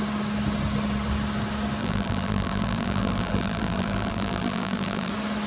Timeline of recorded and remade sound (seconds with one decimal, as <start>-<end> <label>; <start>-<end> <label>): 0.0-1.8 recorded; 1.8-5.1 remade; 5.1-5.5 recorded